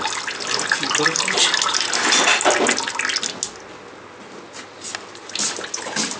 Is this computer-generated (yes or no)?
no